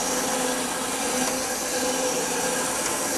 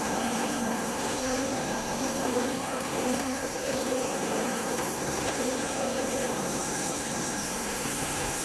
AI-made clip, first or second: second